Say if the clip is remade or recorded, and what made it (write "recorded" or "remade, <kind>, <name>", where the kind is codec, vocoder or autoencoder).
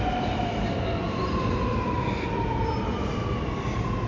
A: recorded